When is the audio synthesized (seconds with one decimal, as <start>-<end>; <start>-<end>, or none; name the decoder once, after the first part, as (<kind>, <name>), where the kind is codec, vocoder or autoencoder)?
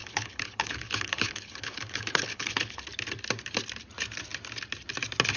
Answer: 0.0-2.8 (codec, HILCodec)